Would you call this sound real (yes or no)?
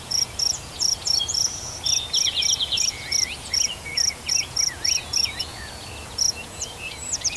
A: no